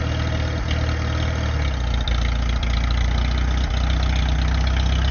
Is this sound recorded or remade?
recorded